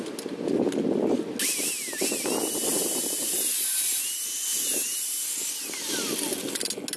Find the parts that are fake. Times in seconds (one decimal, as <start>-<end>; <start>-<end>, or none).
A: 2.7-3.5; 4.5-5.2